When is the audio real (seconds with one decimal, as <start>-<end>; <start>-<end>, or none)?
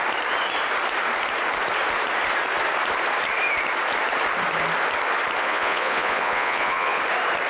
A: 0.0-5.4; 7.0-7.5